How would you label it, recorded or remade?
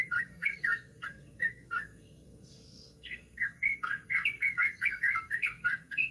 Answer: remade